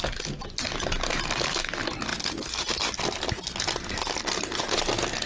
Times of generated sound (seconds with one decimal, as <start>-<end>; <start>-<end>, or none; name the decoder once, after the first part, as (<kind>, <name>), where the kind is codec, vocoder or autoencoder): none